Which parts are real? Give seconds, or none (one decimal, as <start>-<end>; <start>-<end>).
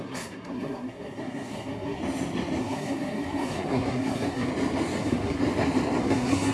2.0-2.6; 4.5-5.0; 5.4-6.0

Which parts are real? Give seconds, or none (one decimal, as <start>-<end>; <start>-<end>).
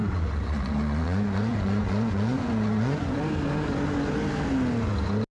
3.2-5.3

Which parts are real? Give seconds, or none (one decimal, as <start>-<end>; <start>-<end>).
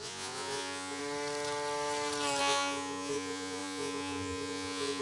1.0-2.4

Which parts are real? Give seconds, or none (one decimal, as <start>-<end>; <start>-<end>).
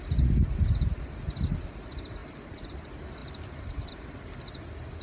0.0-5.0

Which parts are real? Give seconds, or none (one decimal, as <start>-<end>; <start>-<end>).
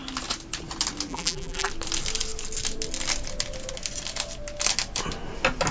0.0-1.1; 1.7-5.7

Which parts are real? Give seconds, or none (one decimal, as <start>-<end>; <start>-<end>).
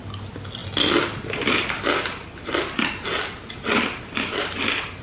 0.0-5.0